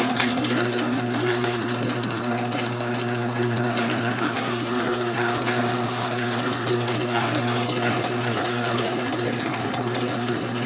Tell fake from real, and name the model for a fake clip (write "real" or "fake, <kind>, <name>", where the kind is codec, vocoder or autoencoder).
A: fake, codec, SNAC